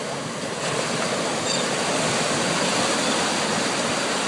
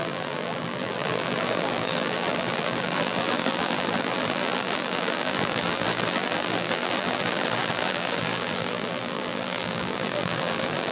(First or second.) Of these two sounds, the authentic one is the first